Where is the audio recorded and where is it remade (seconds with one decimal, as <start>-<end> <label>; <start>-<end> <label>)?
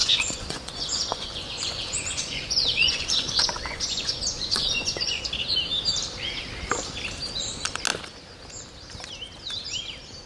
0.0-5.2 remade; 5.2-10.3 recorded